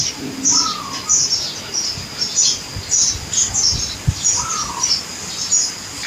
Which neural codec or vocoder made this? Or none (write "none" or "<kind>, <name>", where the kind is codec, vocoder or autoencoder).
none